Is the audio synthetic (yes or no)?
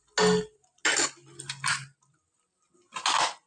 no